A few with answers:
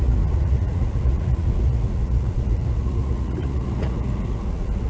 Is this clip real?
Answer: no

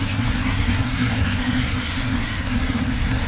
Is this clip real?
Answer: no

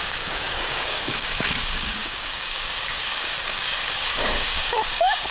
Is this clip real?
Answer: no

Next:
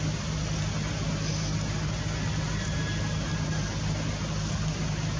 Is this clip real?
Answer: yes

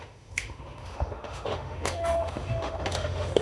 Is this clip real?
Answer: no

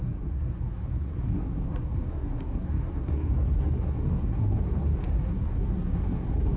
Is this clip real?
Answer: no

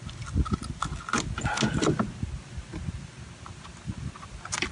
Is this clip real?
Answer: yes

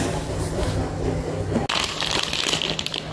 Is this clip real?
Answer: yes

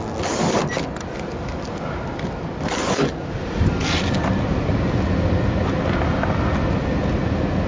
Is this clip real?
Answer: yes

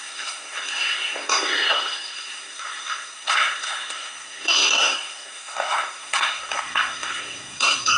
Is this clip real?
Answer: no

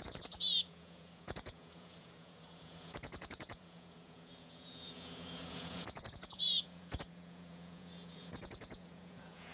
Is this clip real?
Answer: no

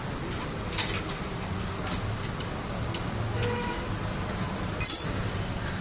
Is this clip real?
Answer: yes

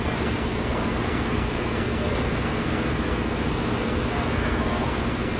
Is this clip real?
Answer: no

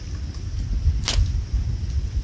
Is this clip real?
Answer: yes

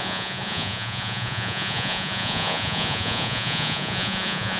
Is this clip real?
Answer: no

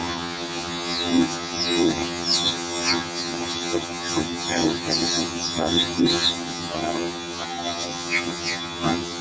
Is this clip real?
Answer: no